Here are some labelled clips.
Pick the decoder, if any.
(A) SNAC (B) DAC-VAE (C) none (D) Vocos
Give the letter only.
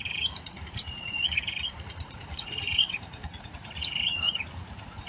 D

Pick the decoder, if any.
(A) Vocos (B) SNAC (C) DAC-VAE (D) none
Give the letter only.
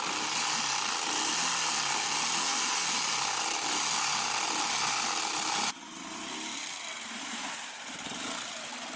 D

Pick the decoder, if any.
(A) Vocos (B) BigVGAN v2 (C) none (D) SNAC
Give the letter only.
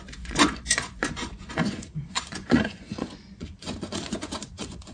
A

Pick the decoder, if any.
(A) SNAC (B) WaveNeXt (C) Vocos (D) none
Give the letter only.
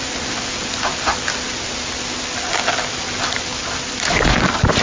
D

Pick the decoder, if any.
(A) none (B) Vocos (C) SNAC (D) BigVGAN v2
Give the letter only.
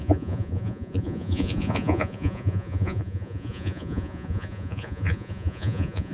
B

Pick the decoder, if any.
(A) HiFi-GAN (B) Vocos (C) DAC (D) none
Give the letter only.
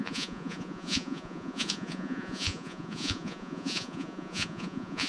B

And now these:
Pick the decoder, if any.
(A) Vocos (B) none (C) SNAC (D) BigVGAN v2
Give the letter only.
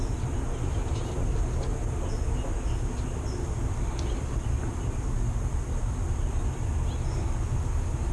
B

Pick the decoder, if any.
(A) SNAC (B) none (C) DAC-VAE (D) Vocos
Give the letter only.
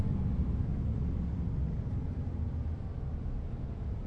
B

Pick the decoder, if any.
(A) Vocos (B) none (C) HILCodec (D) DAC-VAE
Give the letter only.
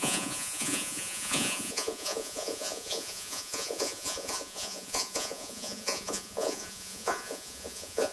A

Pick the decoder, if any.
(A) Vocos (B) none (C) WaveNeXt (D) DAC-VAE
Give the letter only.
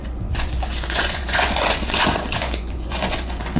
A